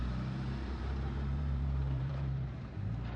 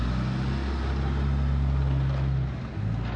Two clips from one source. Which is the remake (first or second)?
first